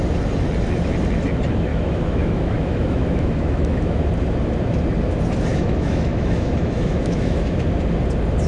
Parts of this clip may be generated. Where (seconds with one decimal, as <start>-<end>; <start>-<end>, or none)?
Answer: 1.7-4.1; 5.5-7.6